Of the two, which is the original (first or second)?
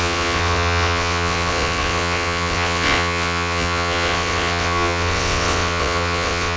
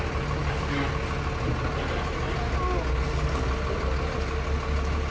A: second